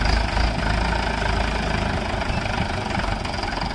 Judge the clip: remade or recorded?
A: recorded